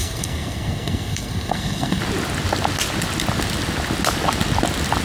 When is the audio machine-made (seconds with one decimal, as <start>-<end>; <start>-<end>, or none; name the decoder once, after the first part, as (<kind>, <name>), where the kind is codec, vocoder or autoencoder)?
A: 0.0-2.0 (codec, SNAC)